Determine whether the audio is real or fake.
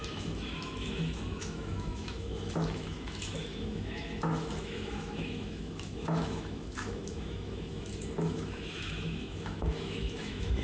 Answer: fake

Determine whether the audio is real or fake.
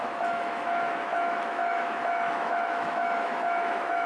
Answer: fake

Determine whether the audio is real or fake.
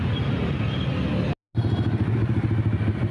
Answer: real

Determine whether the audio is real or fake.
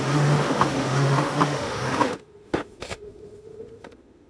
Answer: fake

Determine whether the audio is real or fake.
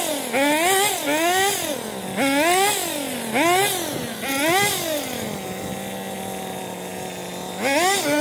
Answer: real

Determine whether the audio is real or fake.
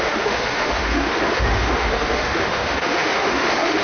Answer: fake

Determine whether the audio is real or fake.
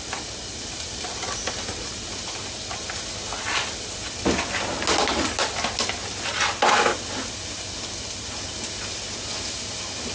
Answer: real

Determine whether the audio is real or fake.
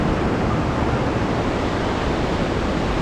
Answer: real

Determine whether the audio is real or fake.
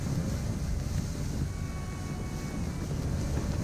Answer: real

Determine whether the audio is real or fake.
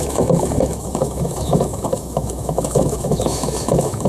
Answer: fake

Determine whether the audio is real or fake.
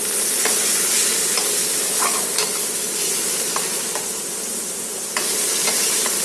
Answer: real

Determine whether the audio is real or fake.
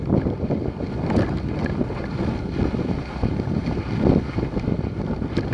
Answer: real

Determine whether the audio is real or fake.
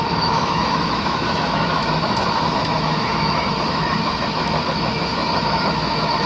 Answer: fake